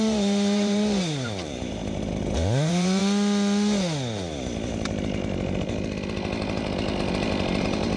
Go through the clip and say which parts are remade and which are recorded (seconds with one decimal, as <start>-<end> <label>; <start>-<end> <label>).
0.0-3.0 remade; 3.0-7.6 recorded; 7.6-8.0 remade